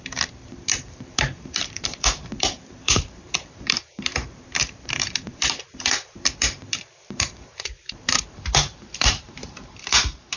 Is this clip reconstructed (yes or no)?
yes